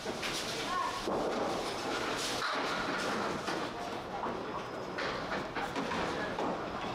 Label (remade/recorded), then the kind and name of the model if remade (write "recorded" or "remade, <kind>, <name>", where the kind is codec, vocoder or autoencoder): recorded